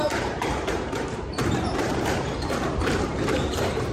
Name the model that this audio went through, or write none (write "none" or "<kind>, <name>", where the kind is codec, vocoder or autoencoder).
vocoder, BigVGAN v2